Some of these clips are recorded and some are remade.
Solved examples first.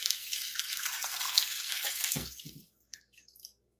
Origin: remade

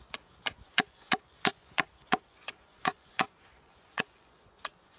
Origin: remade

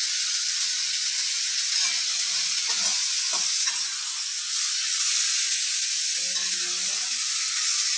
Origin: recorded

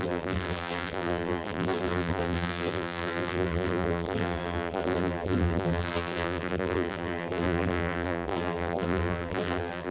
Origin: remade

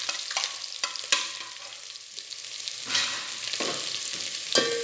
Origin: recorded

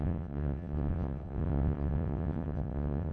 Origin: remade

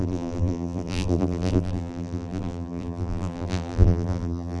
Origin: remade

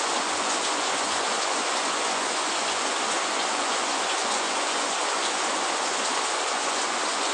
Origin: remade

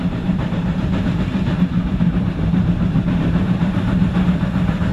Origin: remade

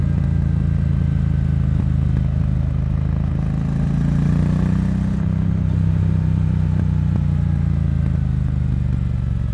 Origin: recorded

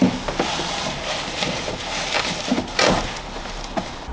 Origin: recorded